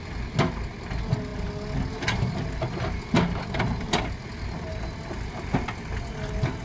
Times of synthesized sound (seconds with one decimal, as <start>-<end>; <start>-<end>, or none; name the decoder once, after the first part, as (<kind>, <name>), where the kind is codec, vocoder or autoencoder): none